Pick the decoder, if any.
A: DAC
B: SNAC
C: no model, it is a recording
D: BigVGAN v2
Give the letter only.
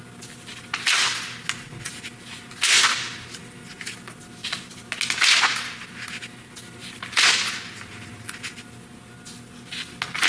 C